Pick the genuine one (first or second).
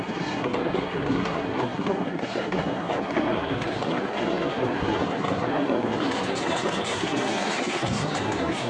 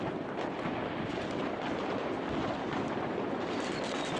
second